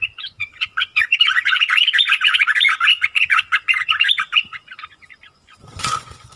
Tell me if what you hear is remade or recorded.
remade